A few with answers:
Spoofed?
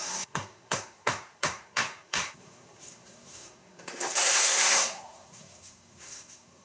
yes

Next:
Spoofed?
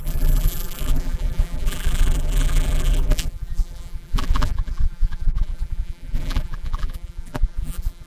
yes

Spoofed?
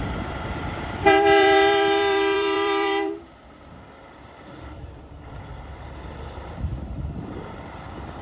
yes